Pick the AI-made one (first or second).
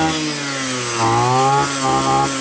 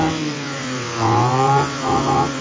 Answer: second